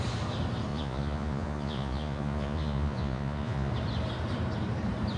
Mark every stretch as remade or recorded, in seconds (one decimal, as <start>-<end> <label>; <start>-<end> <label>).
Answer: 0.0-0.7 recorded; 0.7-3.7 remade; 3.7-5.2 recorded